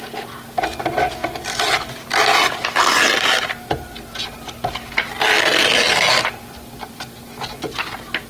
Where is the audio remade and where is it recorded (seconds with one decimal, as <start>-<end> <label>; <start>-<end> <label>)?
0.0-8.3 recorded